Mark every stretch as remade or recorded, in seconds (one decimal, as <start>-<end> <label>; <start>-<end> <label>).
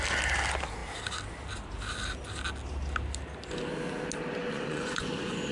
0.0-4.4 recorded; 4.4-5.5 remade